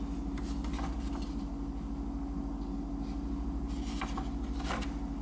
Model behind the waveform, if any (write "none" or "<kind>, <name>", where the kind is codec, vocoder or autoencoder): none